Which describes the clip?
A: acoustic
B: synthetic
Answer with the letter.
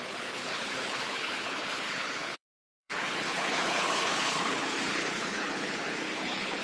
B